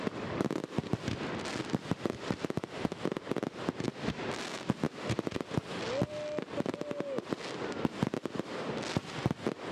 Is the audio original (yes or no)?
yes